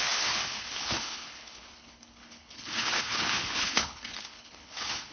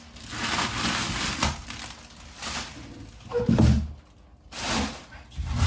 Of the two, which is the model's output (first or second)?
first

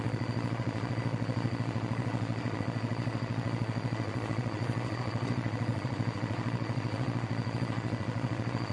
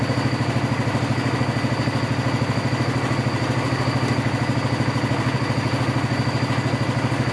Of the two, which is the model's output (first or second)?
first